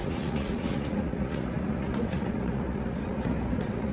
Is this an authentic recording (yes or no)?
no